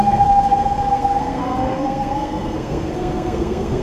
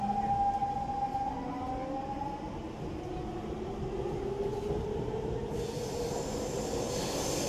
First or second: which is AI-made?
first